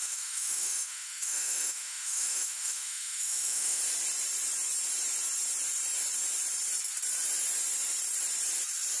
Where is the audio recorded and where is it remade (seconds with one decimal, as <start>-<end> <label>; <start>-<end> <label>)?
0.0-3.8 remade; 3.8-9.0 recorded